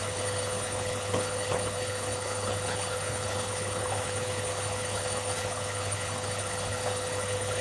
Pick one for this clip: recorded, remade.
remade